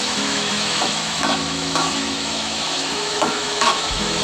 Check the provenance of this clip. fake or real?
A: fake